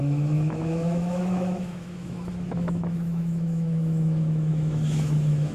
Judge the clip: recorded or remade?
remade